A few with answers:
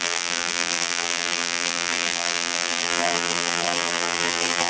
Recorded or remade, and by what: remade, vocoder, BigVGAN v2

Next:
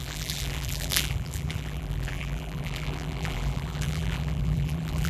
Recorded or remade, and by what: remade, vocoder, BigVGAN v2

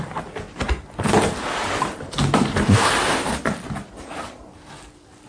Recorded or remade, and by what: recorded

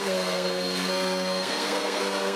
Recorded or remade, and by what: remade, codec, SNAC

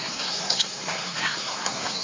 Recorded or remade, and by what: remade, codec, SNAC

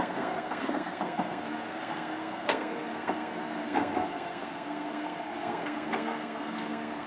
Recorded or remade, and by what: remade, codec, SNAC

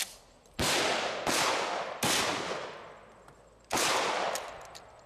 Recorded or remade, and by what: recorded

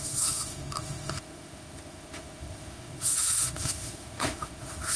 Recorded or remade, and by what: remade, autoencoder, DAC-VAE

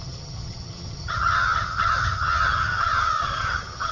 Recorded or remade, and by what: remade, vocoder, HiFi-GAN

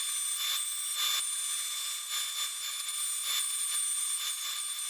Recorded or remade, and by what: recorded